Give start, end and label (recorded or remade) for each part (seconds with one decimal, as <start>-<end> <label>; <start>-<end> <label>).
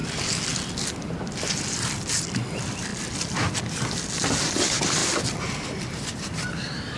0.0-0.9 recorded; 0.9-5.0 remade; 5.0-5.8 recorded; 5.8-7.0 remade